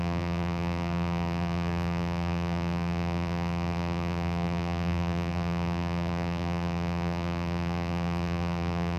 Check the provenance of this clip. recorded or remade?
remade